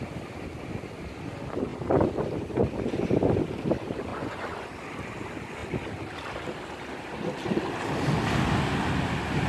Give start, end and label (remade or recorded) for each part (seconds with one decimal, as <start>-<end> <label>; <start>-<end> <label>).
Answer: 0.0-4.1 recorded; 4.1-4.7 remade; 4.7-9.5 recorded